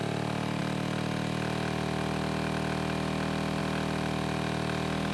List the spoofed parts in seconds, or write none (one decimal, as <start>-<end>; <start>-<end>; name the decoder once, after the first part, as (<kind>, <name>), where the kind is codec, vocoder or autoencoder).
none